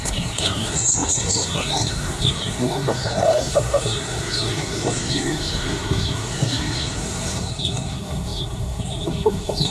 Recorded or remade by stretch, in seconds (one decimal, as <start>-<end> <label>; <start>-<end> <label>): 0.0-9.7 remade